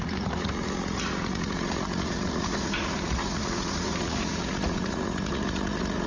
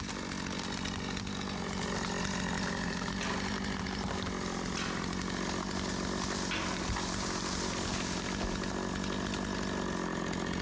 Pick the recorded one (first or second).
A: second